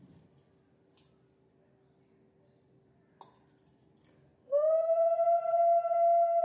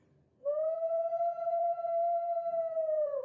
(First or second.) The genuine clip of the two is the first